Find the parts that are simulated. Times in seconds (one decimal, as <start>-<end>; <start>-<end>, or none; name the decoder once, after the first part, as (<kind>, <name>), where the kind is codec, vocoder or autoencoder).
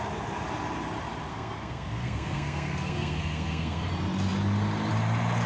1.3-3.9 (codec, SNAC)